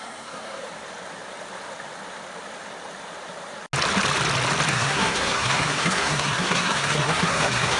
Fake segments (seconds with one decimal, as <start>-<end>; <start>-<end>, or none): 0.0-0.6; 4.7-7.8